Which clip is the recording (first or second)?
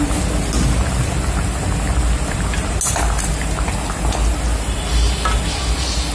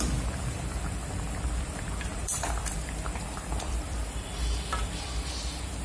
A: first